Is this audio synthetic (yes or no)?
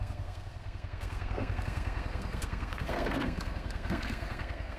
yes